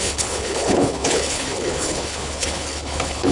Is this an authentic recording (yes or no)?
no